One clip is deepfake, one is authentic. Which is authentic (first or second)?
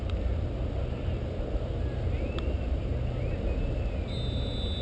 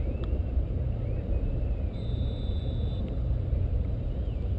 first